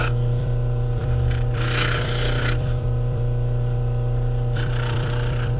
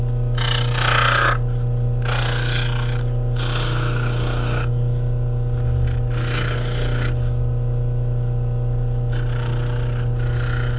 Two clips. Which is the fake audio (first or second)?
first